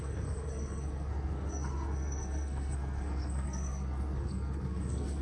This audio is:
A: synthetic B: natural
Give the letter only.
A